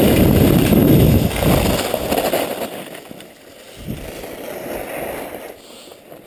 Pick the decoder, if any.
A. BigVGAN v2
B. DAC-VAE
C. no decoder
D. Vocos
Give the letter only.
C